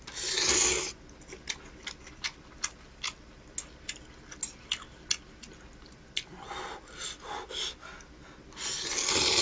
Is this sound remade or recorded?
recorded